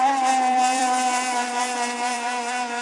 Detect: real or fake fake